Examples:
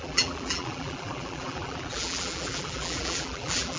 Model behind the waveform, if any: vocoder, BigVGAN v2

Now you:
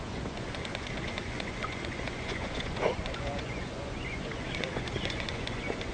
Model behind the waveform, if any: vocoder, Vocos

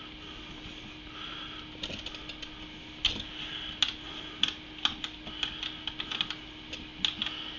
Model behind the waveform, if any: none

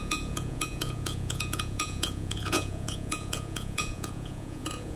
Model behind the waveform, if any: vocoder, Vocos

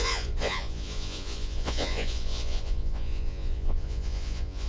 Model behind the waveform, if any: vocoder, Vocos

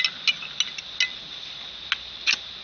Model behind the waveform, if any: none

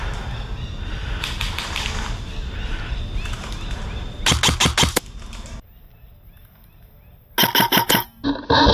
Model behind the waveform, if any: none